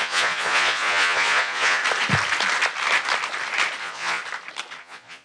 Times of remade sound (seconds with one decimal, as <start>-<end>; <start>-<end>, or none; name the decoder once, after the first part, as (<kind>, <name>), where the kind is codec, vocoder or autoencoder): 0.0-1.8 (vocoder, Vocos); 3.8-4.2; 4.8-5.2